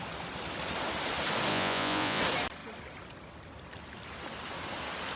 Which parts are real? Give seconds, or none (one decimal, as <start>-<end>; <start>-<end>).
0.0-1.5; 2.2-5.2